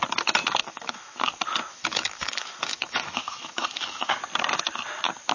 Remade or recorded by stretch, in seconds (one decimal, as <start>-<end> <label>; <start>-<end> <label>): 0.0-0.6 recorded; 0.6-1.2 remade; 1.2-1.7 recorded; 1.7-4.1 remade; 4.1-5.3 recorded